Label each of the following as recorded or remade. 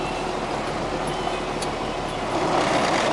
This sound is recorded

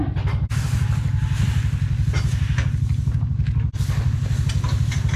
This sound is recorded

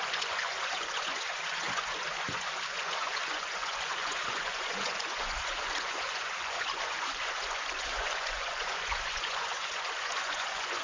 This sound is remade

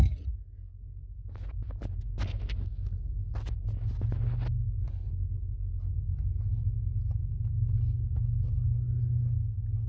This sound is recorded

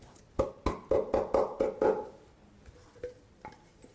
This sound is recorded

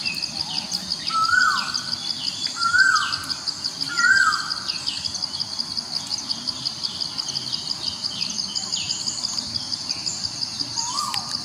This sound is recorded